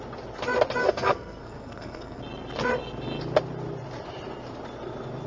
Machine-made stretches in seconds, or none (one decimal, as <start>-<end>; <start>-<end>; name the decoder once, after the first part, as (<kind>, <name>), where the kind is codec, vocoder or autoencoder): 0.8-2.2 (codec, SNAC)